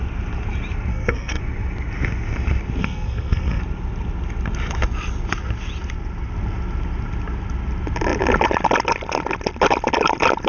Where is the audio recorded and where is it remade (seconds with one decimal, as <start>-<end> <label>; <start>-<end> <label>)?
0.0-0.9 recorded; 0.9-1.4 remade; 1.4-2.8 recorded; 2.8-3.6 remade; 3.6-10.5 recorded